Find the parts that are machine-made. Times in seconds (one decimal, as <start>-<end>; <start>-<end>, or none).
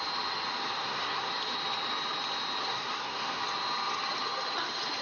0.8-1.3; 2.6-3.4